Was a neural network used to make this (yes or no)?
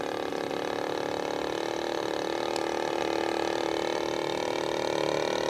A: no